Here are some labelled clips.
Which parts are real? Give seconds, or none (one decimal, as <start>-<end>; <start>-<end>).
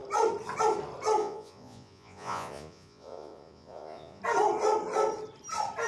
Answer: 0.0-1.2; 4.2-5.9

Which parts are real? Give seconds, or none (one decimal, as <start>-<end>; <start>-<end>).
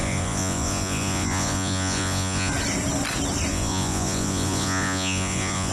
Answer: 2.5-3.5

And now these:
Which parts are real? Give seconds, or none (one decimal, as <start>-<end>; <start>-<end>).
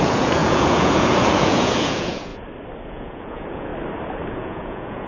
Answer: 2.3-2.9; 3.7-4.3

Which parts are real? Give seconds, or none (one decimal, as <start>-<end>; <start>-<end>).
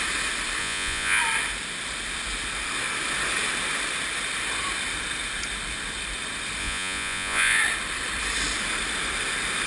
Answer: 0.0-0.6; 1.2-6.6; 7.6-9.7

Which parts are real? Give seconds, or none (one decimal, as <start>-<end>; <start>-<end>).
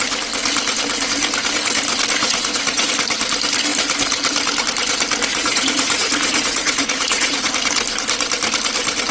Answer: 0.0-2.2; 2.9-5.3; 7.5-9.1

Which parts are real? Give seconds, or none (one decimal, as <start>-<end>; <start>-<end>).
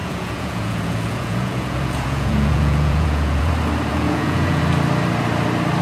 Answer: 3.5-3.9; 4.6-5.8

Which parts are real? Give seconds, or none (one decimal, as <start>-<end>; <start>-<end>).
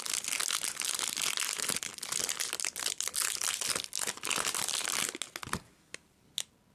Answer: 0.0-6.7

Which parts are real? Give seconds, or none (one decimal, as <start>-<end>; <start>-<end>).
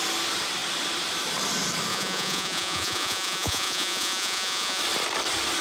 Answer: 0.0-1.9; 4.8-5.6